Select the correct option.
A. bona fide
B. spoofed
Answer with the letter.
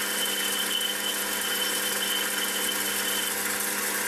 A